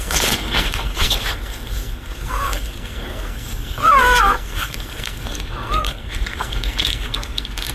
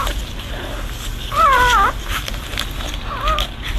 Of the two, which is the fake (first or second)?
first